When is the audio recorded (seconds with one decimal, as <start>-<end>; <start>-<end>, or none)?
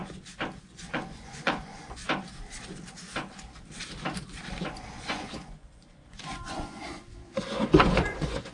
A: 0.0-0.6; 2.0-4.6